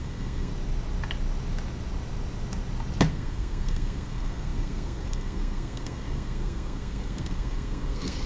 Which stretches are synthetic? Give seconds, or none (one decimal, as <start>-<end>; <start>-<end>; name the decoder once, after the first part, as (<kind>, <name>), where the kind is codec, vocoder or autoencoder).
0.0-0.5 (codec, SNAC); 3.1-8.3

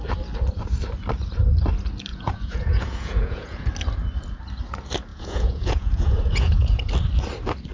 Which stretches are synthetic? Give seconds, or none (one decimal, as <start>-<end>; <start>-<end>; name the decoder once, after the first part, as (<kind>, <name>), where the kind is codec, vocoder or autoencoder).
2.1-3.7 (vocoder, Vocos); 5.1-6.9

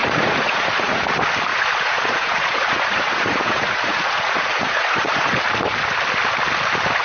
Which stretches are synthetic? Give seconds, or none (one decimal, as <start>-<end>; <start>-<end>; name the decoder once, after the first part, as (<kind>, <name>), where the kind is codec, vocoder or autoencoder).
0.0-1.0 (vocoder, Vocos); 1.5-5.3

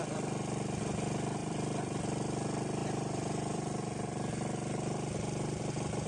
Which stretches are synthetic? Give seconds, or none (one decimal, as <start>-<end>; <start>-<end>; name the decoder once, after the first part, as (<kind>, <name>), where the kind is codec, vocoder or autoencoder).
1.4-2.0 (vocoder, BigVGAN v2); 2.8-4.3

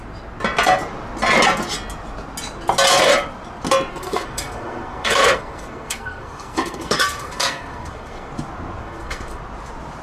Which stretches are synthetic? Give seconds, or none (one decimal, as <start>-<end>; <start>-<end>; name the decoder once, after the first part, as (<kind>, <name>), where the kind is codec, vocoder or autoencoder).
3.9-8.3 (codec, SNAC); 8.8-9.4